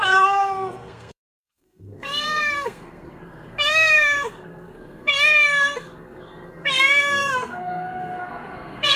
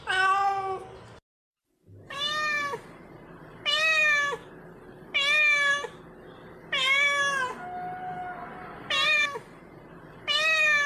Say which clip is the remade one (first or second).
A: first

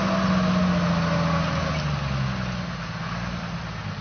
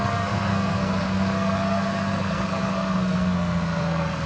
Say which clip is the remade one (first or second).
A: second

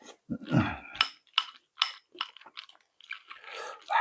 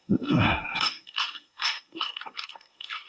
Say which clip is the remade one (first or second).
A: second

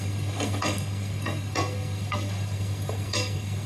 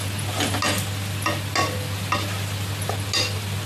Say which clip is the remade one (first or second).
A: first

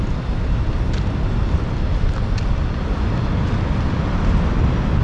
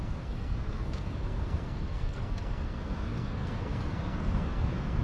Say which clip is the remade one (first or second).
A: second